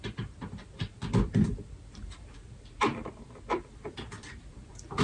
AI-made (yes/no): yes